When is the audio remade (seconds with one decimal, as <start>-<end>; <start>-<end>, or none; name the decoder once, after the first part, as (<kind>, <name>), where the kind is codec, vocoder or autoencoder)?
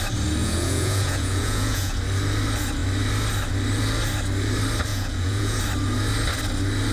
0.4-2.0 (vocoder, Vocos); 4.9-5.6